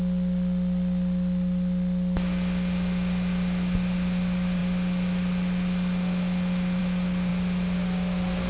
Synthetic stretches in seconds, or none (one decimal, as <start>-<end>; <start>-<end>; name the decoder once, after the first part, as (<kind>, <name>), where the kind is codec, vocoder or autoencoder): none